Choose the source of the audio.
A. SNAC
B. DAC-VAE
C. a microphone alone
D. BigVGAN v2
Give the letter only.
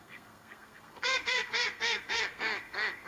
A